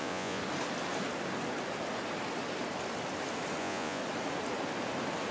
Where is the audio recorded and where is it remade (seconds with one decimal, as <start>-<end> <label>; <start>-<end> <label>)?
0.0-0.4 remade; 0.4-3.6 recorded; 3.6-4.0 remade; 4.0-5.3 recorded